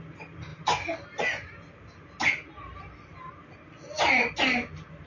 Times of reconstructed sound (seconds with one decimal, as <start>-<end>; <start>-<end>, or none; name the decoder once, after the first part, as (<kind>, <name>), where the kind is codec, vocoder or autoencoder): none